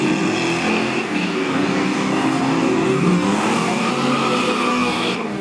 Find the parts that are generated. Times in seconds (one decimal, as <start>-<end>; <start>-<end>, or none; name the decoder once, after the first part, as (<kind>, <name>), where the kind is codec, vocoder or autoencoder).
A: 0.7-3.9 (codec, DAC); 4.7-5.4